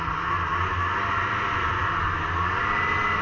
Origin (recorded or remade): recorded